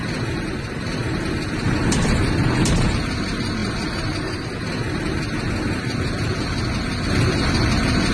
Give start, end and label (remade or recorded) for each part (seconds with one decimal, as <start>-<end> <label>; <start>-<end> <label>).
0.0-8.1 remade